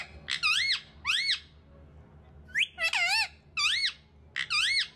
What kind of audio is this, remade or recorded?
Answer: recorded